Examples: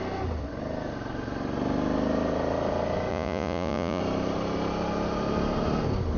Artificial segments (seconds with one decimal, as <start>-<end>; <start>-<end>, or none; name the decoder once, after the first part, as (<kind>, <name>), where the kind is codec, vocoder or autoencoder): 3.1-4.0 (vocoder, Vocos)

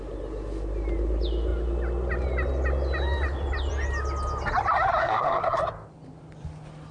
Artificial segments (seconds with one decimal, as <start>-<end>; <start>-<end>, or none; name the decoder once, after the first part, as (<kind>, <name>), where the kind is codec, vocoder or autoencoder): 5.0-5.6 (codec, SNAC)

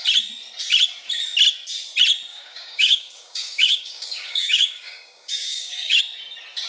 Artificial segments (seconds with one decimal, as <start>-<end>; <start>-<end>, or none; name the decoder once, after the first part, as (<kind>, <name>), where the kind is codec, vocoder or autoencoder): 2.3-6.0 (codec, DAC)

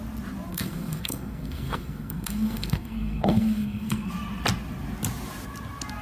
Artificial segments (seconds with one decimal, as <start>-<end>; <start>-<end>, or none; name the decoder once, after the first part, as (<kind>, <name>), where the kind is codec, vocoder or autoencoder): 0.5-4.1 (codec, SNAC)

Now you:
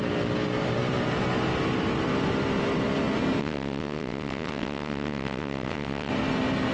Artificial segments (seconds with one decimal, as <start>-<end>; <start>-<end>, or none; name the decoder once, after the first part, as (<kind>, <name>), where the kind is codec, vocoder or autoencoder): 3.4-6.1 (vocoder, WaveNeXt)

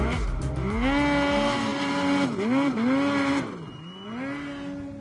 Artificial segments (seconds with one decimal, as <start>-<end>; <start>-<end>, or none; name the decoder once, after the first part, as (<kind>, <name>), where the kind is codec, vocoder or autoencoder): none